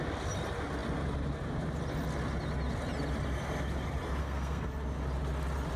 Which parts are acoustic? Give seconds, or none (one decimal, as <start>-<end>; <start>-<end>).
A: 0.0-4.2; 4.7-5.8